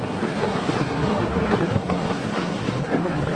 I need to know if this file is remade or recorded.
remade